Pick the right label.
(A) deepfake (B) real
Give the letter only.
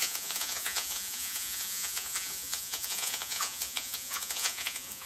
A